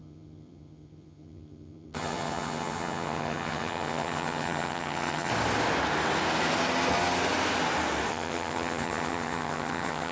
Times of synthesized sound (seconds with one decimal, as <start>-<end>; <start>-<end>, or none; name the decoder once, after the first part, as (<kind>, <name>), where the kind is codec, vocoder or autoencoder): 0.0-5.3 (vocoder, HiFi-GAN); 8.1-10.1